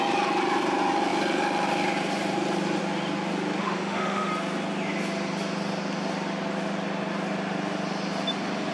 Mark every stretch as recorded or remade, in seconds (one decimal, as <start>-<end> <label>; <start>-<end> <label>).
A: 0.0-3.6 recorded; 3.6-4.3 remade; 4.3-8.7 recorded